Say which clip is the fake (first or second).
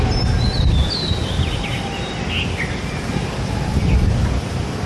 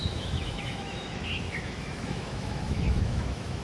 second